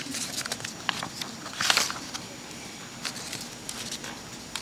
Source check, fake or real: fake